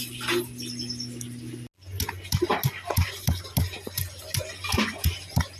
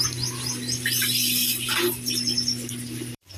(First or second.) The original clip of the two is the first